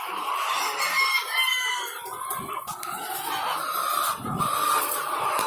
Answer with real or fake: real